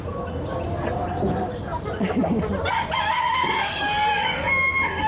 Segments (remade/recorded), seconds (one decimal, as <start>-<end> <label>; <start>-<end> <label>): 0.0-3.1 recorded; 3.1-5.1 remade